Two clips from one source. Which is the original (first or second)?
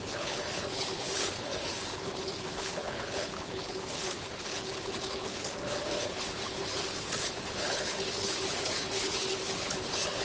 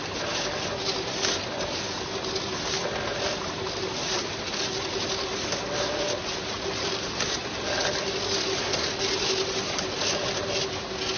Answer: second